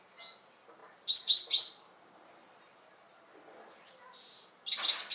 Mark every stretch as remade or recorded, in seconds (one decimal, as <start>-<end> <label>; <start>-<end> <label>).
0.0-5.1 recorded